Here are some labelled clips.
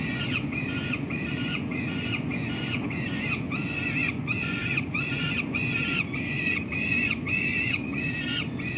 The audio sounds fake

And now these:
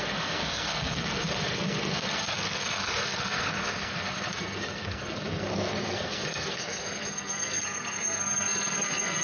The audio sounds fake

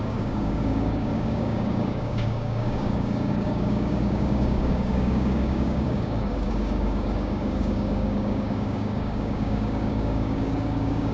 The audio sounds fake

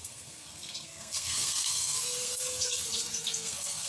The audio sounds fake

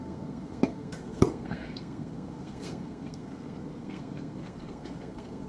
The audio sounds fake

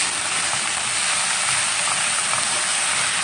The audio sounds real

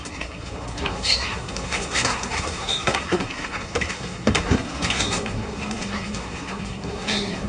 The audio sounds fake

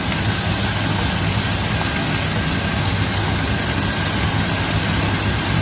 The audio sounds real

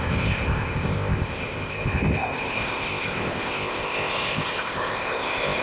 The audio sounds fake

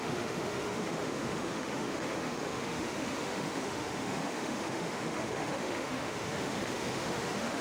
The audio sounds fake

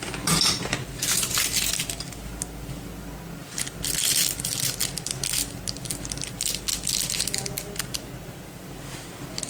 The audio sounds real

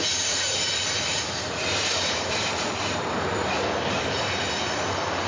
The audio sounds fake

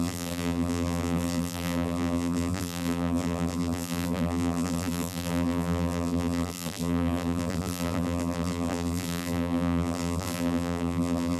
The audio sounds fake